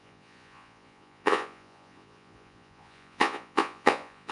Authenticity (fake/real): fake